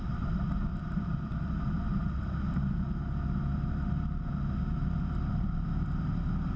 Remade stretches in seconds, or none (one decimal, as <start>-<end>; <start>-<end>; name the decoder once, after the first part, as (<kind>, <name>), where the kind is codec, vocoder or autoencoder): 0.7-2.2 (vocoder, BigVGAN v2)